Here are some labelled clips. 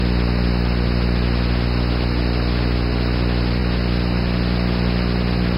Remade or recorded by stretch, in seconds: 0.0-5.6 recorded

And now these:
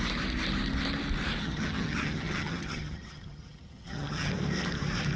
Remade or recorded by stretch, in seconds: 0.0-1.4 recorded; 1.4-4.3 remade; 4.3-5.2 recorded

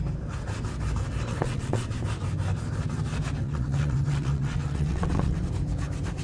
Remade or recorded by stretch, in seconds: 0.0-1.3 recorded; 1.3-2.0 remade; 2.0-3.4 recorded; 3.4-5.4 remade; 5.4-6.2 recorded

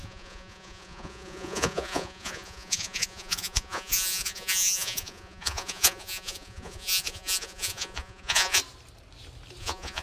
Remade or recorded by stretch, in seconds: 0.0-8.6 remade; 8.6-9.6 recorded; 9.6-10.0 remade

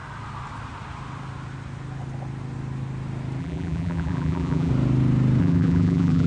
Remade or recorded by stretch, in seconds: 0.0-3.4 recorded; 3.4-4.7 remade; 4.7-5.4 recorded; 5.4-6.3 remade